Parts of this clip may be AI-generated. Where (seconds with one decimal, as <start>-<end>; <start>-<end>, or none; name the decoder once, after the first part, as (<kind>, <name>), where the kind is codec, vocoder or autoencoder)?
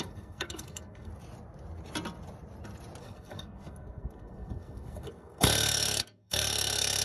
0.0-1.1 (codec, SNAC); 3.0-7.0